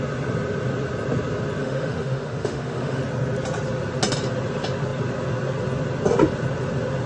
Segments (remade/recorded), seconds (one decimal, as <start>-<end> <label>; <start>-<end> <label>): 0.0-1.6 recorded; 1.6-3.0 remade; 3.0-7.1 recorded